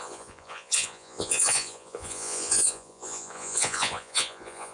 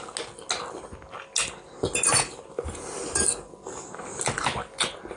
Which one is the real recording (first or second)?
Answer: second